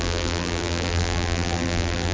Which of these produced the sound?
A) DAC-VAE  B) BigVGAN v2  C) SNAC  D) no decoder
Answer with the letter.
B